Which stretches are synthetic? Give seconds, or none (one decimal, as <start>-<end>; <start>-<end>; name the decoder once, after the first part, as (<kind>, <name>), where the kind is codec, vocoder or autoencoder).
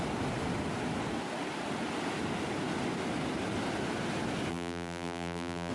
4.5-5.7 (vocoder, BigVGAN v2)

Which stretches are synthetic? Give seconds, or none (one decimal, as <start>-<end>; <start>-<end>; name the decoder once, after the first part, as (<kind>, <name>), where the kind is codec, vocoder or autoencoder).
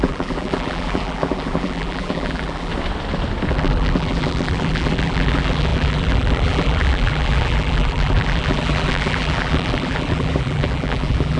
0.0-2.7 (vocoder, BigVGAN v2); 3.5-11.4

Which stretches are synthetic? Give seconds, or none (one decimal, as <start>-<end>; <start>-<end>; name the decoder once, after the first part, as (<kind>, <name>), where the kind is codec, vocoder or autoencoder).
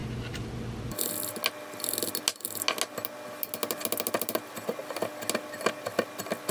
0.0-1.1 (vocoder, BigVGAN v2)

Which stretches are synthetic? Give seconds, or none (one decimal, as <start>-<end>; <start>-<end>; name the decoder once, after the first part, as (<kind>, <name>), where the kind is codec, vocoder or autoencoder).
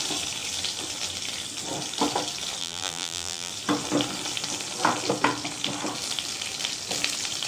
2.6-3.5 (vocoder, BigVGAN v2)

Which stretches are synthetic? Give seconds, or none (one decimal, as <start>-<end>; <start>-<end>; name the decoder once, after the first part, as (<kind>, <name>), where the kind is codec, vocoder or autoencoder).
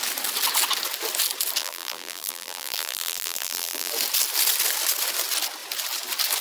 1.6-3.9 (vocoder, BigVGAN v2)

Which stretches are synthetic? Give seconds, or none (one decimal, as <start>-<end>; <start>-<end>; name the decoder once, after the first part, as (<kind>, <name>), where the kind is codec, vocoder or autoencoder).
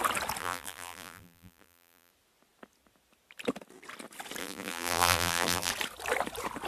0.4-2.1 (vocoder, BigVGAN v2); 4.4-5.7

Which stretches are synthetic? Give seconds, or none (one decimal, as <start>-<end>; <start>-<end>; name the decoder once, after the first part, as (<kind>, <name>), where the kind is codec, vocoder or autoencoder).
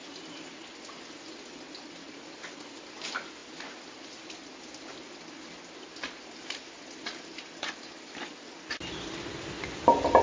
none